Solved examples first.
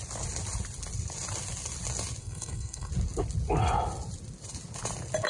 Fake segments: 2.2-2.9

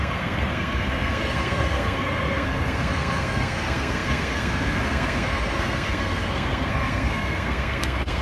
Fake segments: 0.0-8.2

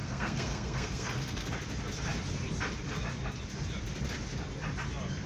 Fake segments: 0.0-1.5